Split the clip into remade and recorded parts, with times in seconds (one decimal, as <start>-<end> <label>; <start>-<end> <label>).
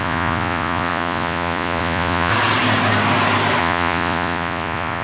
0.0-2.3 remade; 2.3-3.6 recorded; 3.6-5.0 remade